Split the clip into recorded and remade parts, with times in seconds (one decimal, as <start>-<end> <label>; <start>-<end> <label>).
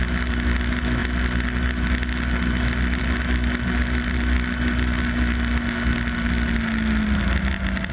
0.0-7.9 recorded